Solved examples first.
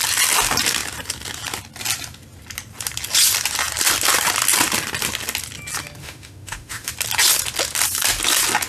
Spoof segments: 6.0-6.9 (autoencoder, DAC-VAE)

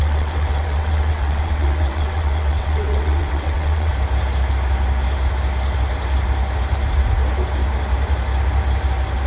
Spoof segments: 0.0-3.9 (vocoder, WaveNeXt)